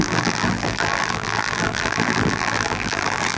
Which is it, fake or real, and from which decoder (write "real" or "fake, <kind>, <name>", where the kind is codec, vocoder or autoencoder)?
fake, vocoder, BigVGAN v2